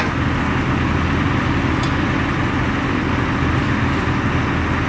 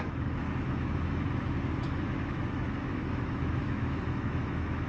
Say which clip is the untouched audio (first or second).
first